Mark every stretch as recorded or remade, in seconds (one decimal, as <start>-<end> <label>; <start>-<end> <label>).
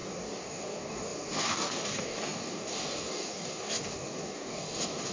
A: 0.0-5.1 remade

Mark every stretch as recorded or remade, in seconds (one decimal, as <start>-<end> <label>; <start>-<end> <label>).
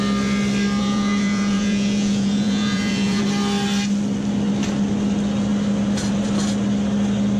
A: 0.0-0.8 recorded; 0.8-3.2 remade; 3.2-7.4 recorded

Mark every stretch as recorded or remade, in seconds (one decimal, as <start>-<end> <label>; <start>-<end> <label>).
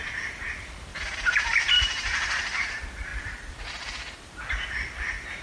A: 0.0-0.9 remade; 0.9-1.7 recorded; 1.7-5.4 remade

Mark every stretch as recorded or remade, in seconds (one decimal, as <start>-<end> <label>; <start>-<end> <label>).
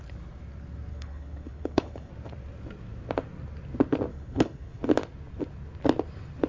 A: 0.0-0.9 recorded; 0.9-2.1 remade; 2.1-4.1 recorded; 4.1-4.8 remade; 4.8-6.5 recorded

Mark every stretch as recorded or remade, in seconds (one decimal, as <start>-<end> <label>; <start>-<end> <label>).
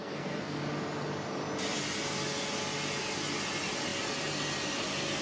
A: 0.0-0.6 remade; 0.6-5.2 recorded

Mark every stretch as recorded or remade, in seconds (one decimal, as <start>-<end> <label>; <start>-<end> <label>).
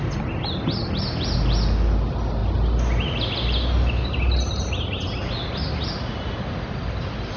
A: 0.0-7.4 recorded